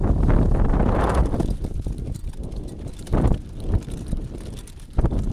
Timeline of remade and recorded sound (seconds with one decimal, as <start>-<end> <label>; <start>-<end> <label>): 0.0-5.3 recorded